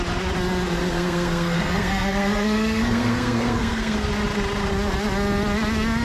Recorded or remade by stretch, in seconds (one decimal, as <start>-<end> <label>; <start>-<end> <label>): 0.0-0.8 recorded; 0.8-4.1 remade; 4.1-6.0 recorded